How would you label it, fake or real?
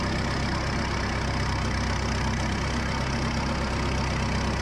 real